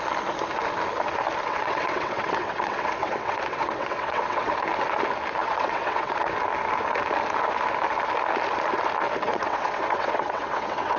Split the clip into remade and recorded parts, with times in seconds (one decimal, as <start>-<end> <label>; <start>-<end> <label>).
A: 0.0-1.5 recorded; 1.5-4.5 remade; 4.5-5.4 recorded; 5.4-6.2 remade; 6.2-9.3 recorded; 9.3-11.0 remade